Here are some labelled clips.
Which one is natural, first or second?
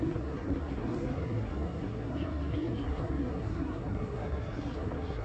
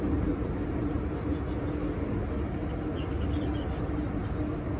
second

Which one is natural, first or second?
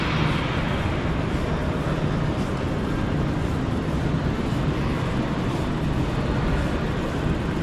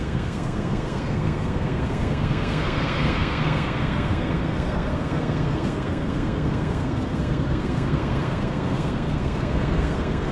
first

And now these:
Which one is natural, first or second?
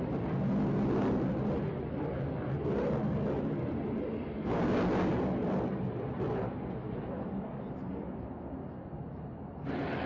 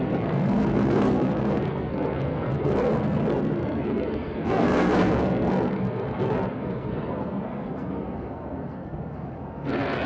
first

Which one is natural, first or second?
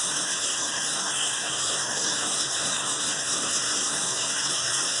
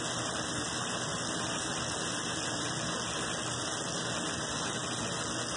second